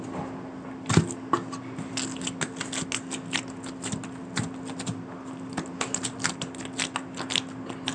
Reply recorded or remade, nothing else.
recorded